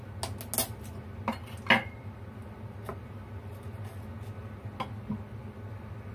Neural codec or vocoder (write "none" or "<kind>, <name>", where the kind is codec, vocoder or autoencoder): none